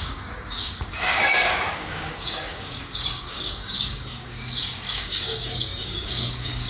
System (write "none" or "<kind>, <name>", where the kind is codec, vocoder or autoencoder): codec, DAC